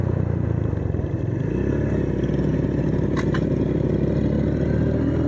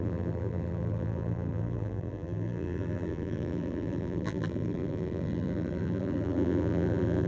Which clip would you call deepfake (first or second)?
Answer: second